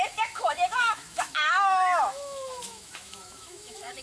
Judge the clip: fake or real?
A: fake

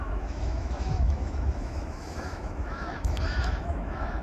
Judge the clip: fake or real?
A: fake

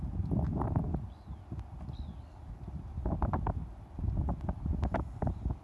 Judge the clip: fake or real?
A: real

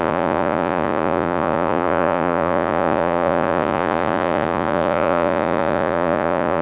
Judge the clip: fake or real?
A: fake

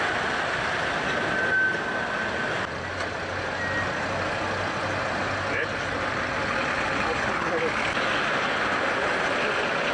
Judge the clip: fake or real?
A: real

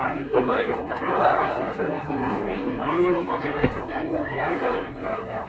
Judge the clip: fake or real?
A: fake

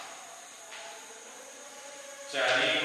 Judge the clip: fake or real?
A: fake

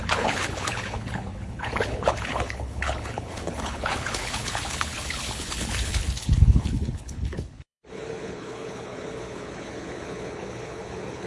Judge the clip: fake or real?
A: fake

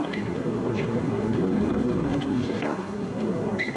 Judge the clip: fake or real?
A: fake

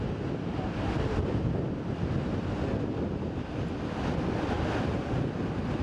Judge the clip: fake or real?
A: real